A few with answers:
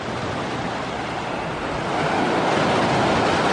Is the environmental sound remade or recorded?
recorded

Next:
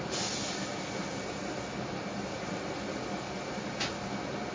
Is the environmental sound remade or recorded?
recorded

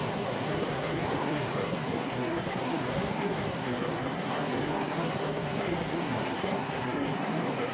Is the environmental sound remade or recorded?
remade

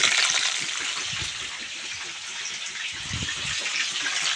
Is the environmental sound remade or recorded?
recorded